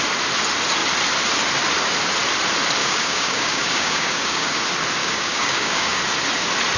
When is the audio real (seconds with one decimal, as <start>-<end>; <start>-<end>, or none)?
0.0-2.8; 4.6-5.0; 6.0-6.8